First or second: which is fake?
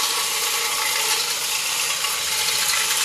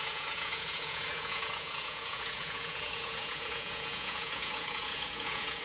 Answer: second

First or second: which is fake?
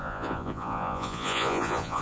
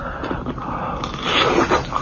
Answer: first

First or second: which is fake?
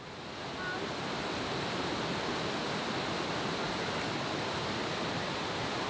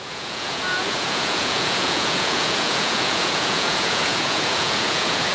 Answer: second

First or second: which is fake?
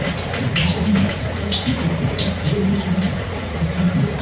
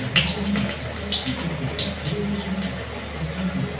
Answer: first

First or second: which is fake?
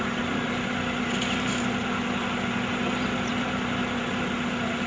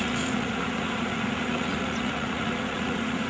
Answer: second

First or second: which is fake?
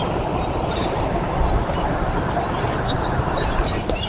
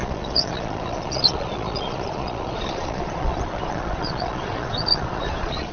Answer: second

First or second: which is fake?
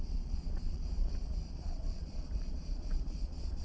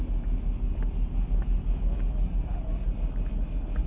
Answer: first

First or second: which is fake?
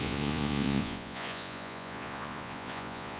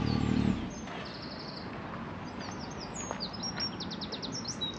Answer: first